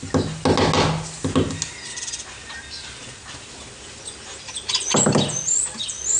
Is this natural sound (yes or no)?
yes